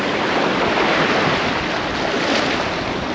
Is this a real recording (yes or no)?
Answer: yes